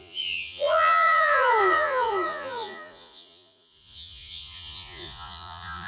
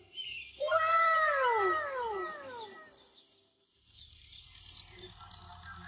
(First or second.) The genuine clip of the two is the second